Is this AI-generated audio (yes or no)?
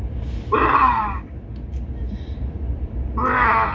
yes